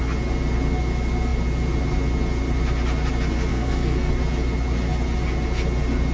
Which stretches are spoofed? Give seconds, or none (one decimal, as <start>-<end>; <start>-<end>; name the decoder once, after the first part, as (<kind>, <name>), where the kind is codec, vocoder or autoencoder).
3.5-4.1 (codec, SNAC)